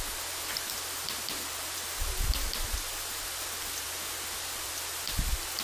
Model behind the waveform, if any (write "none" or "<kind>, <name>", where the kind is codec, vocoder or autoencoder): none